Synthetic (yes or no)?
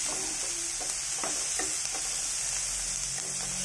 no